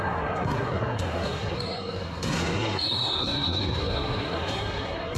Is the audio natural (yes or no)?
no